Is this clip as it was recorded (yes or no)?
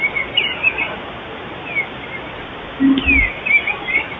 yes